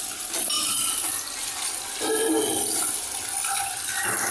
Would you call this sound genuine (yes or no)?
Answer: yes